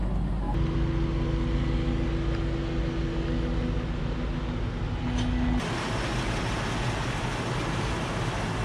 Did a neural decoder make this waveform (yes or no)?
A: no